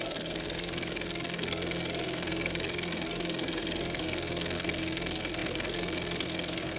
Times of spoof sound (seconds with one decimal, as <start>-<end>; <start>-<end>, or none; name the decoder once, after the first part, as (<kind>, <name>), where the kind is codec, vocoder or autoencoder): 0.0-6.8 (codec, SNAC)